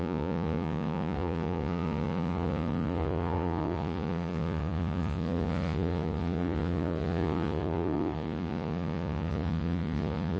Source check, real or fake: fake